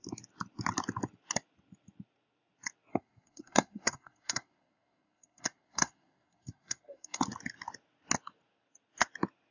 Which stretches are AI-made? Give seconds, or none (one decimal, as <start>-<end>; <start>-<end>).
2.9-7.2